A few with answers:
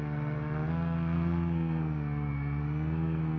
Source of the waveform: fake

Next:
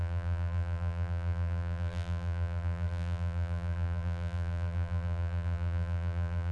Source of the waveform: fake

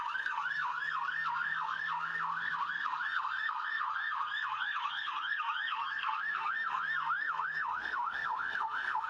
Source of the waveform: fake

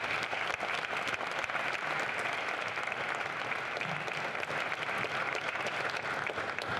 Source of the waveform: real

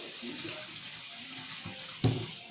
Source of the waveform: real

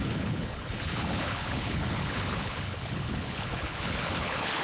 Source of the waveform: fake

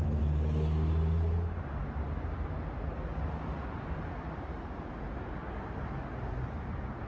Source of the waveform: real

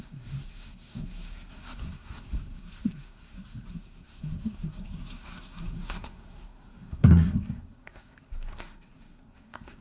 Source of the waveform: fake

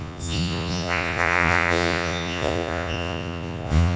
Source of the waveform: fake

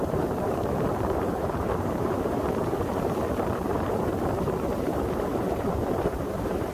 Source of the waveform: fake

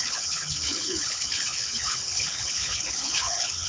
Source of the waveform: fake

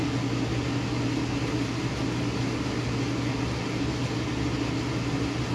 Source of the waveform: real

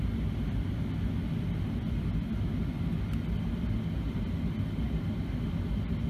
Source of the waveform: real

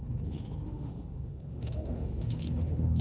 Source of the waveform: fake